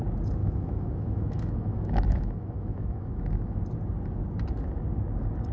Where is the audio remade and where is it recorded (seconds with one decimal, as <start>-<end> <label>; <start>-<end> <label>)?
0.0-0.4 recorded; 0.4-3.6 remade; 3.6-5.5 recorded